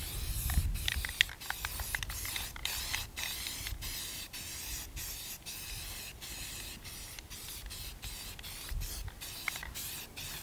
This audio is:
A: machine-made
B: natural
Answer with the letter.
B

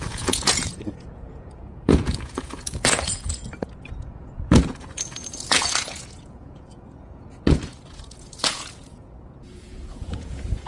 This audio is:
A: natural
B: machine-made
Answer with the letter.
B